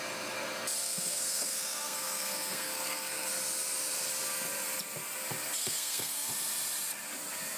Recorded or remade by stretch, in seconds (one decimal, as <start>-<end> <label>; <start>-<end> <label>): 0.0-0.8 recorded; 0.8-3.3 remade; 3.3-5.6 recorded; 5.6-6.3 remade; 6.3-7.6 recorded